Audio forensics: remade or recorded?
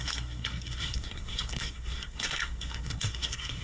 remade